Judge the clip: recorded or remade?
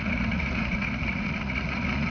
remade